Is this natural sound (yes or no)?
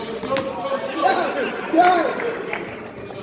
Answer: yes